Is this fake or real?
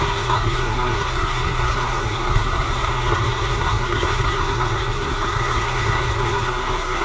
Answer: fake